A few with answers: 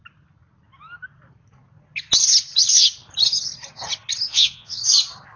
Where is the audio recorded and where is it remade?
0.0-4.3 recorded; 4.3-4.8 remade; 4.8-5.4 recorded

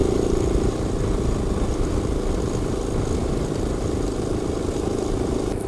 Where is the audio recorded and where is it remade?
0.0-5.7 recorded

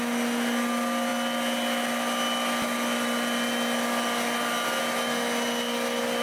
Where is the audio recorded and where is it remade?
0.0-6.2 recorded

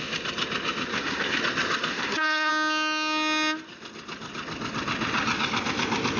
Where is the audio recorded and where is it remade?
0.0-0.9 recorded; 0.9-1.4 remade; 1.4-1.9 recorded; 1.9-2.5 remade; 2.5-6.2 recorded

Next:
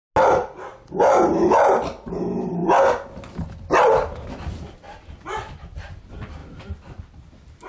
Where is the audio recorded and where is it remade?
0.0-7.7 recorded

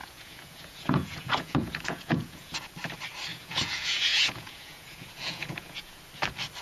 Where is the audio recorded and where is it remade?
0.0-2.7 remade; 2.7-3.3 recorded; 3.3-6.0 remade; 6.0-6.6 recorded

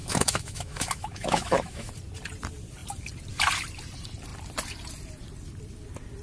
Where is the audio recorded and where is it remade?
0.0-1.9 remade; 1.9-6.2 recorded

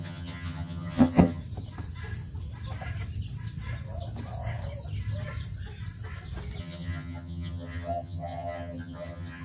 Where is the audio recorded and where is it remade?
0.0-1.4 remade; 1.4-6.6 recorded; 6.6-9.4 remade